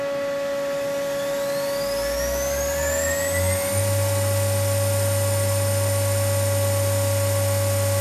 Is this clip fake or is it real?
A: real